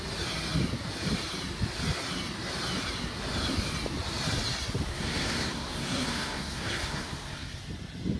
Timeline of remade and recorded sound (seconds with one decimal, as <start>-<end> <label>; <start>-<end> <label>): 0.0-4.9 recorded; 4.9-7.6 remade; 7.6-8.2 recorded